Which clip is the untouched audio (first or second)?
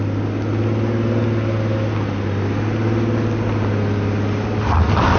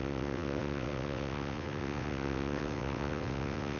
first